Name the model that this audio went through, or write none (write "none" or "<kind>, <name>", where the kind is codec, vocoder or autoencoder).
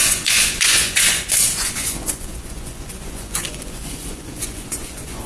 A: vocoder, Vocos